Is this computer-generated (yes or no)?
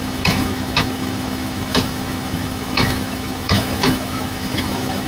yes